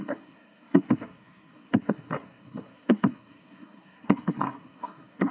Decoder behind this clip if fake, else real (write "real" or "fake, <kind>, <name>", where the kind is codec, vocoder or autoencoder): fake, codec, SNAC